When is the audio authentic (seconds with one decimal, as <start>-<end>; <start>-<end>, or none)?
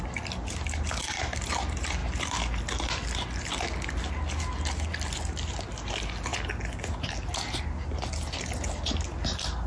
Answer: 0.0-9.7